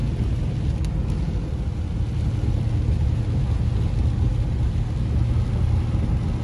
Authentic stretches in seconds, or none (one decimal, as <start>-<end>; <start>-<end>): 0.0-6.4